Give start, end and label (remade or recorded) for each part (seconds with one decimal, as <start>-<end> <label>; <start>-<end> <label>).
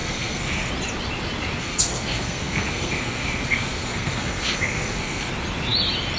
0.0-0.7 remade; 0.7-1.6 recorded; 1.6-5.3 remade; 5.3-6.2 recorded